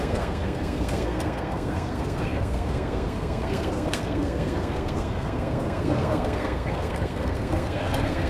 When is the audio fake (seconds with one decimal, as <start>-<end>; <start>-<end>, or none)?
0.0-8.3